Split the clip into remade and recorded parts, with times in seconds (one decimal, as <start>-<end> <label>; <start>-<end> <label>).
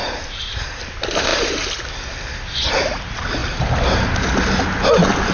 0.0-0.8 remade; 0.8-3.4 recorded; 3.4-4.2 remade; 4.2-5.3 recorded